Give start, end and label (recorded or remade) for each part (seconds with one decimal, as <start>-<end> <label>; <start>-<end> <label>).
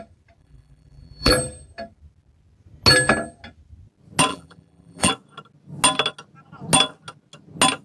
0.0-0.4 recorded; 0.4-1.3 remade; 1.3-4.3 recorded; 4.3-5.1 remade; 5.1-7.8 recorded